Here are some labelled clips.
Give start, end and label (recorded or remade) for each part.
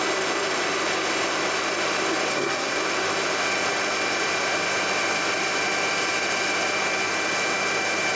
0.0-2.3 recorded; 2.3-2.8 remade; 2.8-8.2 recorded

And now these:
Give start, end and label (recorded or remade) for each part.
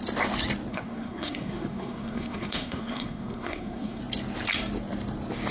0.0-0.7 recorded; 0.7-4.0 remade; 4.0-5.5 recorded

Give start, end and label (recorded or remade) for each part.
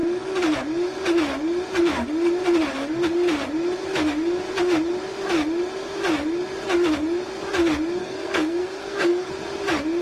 0.0-8.0 recorded; 8.0-9.3 remade; 9.3-10.0 recorded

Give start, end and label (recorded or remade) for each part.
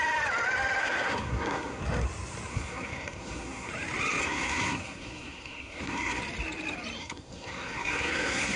0.0-0.8 recorded; 0.8-1.8 remade; 1.8-2.5 recorded; 2.5-3.7 remade; 3.7-4.2 recorded; 4.2-6.2 remade; 6.2-7.0 recorded; 7.0-8.6 remade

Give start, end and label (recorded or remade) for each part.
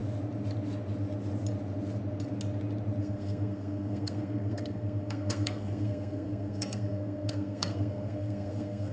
0.0-3.0 recorded; 3.0-8.9 remade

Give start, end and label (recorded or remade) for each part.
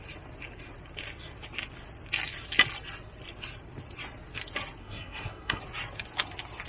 0.0-4.8 recorded; 4.8-5.6 remade; 5.6-6.7 recorded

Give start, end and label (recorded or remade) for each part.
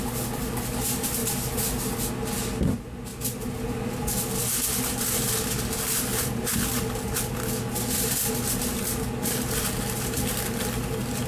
0.0-11.3 recorded